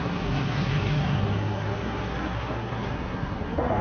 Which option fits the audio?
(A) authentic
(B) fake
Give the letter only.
B